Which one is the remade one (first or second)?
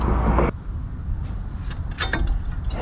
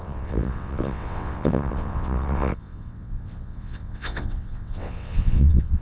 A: second